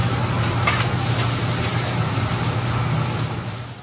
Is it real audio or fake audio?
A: real